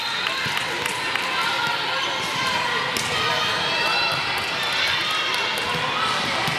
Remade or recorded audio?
recorded